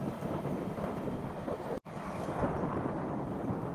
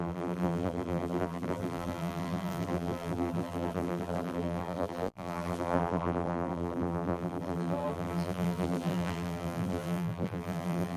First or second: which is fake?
second